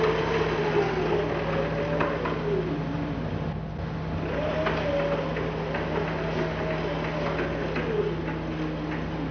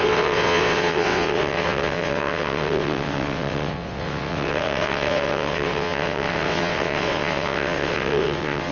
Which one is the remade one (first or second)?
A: second